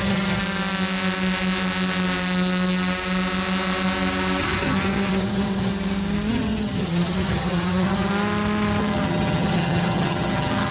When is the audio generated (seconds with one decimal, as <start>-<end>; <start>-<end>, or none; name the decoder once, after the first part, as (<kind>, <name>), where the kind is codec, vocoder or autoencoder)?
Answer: 0.0-0.4 (vocoder, HiFi-GAN); 4.4-5.7; 6.3-8.1; 8.8-10.7